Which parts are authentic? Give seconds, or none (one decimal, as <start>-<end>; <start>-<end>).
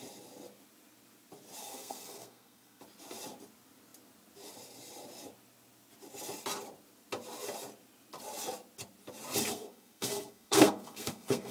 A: 0.0-1.6; 2.8-9.5